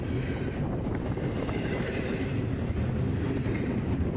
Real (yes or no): no